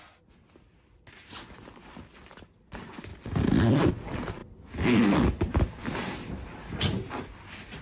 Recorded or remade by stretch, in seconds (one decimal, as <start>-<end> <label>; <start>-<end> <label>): 0.0-3.1 recorded; 3.1-3.9 remade; 3.9-7.8 recorded